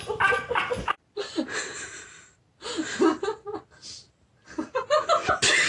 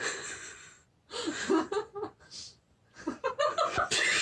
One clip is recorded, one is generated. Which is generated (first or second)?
second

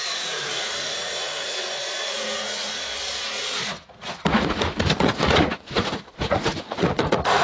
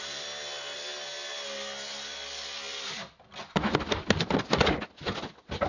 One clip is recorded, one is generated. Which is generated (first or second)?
first